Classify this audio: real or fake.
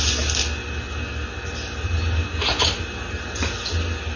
real